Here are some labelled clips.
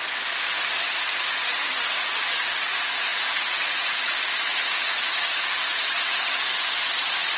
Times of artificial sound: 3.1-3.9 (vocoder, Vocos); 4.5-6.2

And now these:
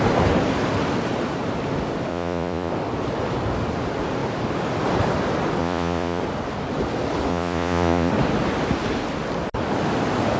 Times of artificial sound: 2.1-2.7 (vocoder, Vocos); 5.6-6.2; 7.3-8.1

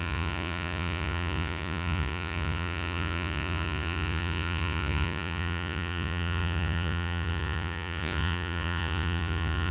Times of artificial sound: 0.0-9.7 (vocoder, Vocos)

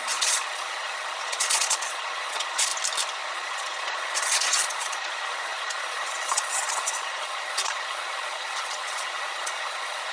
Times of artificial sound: 0.0-2.7 (vocoder, Vocos); 3.3-10.1